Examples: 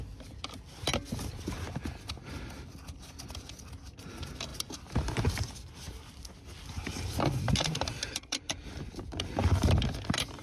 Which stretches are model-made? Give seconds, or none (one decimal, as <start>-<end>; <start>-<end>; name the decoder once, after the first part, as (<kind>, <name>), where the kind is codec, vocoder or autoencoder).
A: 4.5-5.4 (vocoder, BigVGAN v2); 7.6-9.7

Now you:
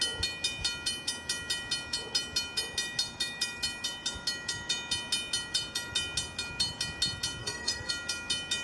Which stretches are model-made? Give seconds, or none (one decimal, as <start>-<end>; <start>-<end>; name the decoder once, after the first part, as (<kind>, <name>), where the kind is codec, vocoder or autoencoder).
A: 7.4-7.9 (codec, SNAC)

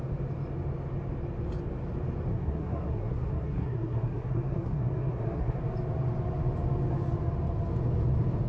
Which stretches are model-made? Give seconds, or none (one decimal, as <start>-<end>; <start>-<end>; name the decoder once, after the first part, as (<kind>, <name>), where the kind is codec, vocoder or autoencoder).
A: 2.3-5.6 (codec, SNAC)

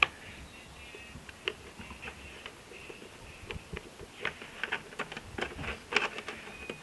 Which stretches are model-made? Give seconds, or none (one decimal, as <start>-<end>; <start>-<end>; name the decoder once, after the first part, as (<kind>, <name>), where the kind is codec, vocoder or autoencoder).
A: none

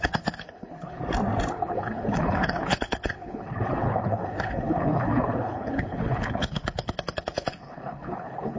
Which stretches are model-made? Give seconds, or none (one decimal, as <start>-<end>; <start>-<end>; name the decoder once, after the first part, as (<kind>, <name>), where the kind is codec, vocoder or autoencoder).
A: 0.0-1.0 (codec, HILCodec); 1.5-8.6

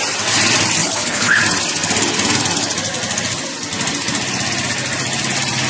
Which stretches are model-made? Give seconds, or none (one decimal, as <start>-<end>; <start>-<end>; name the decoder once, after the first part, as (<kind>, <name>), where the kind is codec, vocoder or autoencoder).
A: 0.8-1.4 (codec, HILCodec)

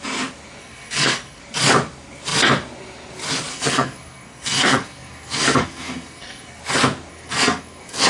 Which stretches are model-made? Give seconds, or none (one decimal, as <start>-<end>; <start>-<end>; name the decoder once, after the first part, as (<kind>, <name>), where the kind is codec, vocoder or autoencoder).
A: 0.6-1.4 (codec, SNAC); 3.5-6.6; 7.1-8.1

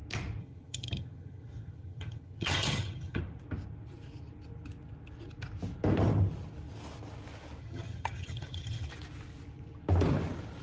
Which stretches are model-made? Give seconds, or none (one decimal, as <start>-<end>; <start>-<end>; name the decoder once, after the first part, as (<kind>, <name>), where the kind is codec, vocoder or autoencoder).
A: 0.4-3.2 (vocoder, HiFi-GAN); 7.6-8.9